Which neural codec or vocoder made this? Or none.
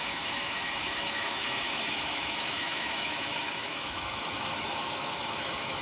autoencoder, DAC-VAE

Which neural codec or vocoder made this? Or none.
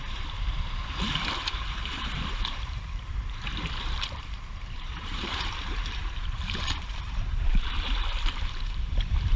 vocoder, BigVGAN v2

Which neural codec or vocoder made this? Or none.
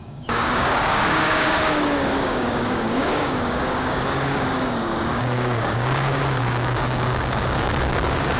codec, DAC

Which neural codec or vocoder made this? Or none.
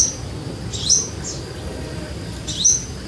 none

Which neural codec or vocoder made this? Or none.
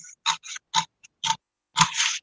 none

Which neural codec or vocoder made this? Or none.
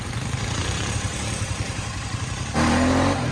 vocoder, BigVGAN v2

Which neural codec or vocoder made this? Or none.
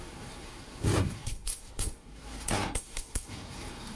codec, SNAC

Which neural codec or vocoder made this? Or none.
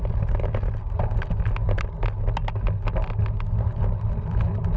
none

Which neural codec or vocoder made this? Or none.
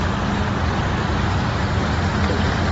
none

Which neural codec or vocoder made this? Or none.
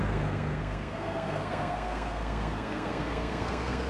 codec, SNAC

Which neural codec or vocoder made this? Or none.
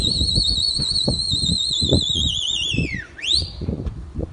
vocoder, Vocos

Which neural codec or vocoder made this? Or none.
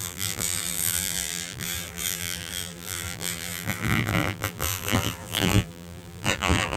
vocoder, BigVGAN v2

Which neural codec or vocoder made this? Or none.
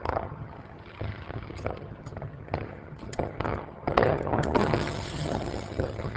vocoder, HiFi-GAN